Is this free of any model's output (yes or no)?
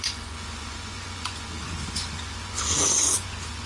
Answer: no